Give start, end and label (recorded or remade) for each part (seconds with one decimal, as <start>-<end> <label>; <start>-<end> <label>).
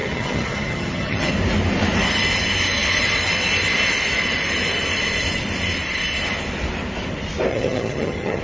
0.0-1.3 remade; 1.3-7.5 recorded; 7.5-8.4 remade